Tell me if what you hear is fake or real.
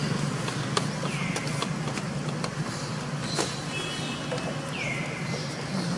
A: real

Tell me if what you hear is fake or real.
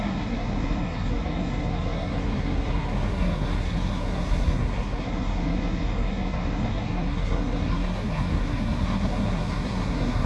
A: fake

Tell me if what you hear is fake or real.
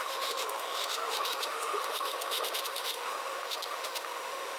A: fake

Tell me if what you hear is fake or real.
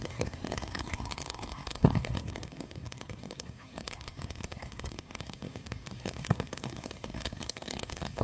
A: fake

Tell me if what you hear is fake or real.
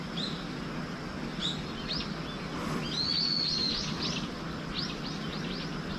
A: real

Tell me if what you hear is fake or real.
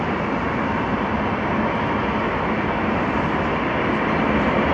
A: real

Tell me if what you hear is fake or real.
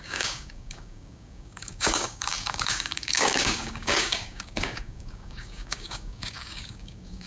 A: fake